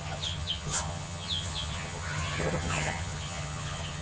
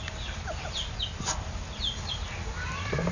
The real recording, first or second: second